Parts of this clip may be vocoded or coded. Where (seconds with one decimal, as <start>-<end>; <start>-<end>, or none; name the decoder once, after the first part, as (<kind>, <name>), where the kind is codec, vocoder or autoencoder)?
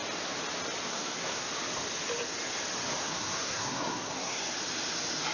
0.9-1.5 (codec, SNAC); 3.0-4.4